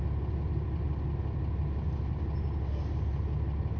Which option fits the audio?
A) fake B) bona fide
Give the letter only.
B